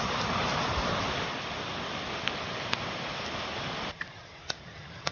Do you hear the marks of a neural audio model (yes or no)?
no